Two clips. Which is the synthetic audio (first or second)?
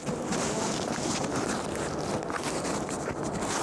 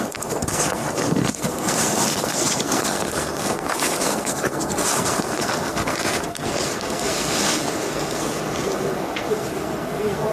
second